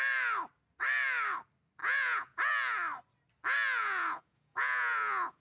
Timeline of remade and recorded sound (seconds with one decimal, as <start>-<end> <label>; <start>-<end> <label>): 0.0-1.8 recorded; 1.8-2.5 remade; 2.5-3.8 recorded; 3.8-5.4 remade